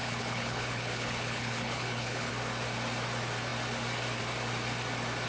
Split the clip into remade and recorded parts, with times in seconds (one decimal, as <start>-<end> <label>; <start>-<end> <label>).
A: 0.0-2.3 remade; 2.3-5.3 recorded